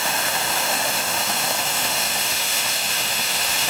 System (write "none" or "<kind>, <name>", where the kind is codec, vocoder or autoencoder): autoencoder, DAC-VAE